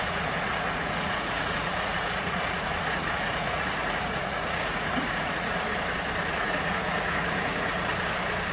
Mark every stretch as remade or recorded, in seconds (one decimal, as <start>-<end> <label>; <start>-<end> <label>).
0.0-5.7 remade; 5.7-6.3 recorded; 6.3-7.9 remade; 7.9-8.5 recorded